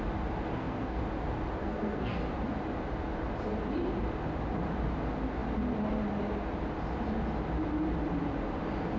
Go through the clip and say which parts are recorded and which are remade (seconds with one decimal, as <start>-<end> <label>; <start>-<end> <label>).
0.0-0.5 recorded; 0.5-1.0 remade; 1.0-1.6 recorded; 1.6-2.2 remade; 2.2-9.0 recorded